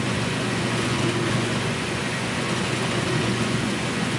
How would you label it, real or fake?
fake